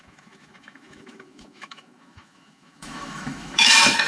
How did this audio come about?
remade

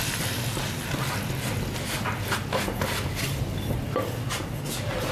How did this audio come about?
recorded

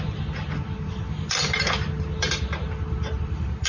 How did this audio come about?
recorded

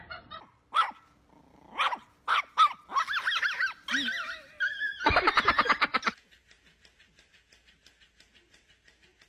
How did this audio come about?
recorded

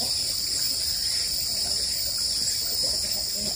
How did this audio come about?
recorded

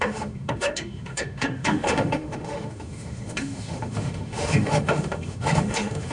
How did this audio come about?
remade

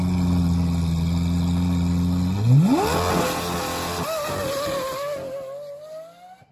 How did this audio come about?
recorded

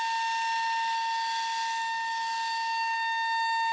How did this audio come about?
remade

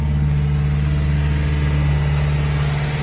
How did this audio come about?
recorded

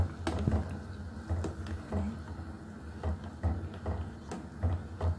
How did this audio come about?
recorded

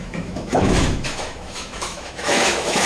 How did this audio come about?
remade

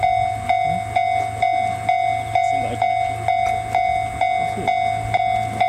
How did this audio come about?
recorded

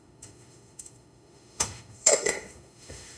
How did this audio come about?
remade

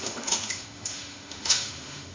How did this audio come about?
remade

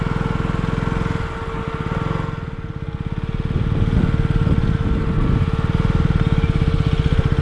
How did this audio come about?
recorded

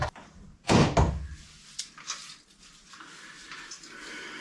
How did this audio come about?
recorded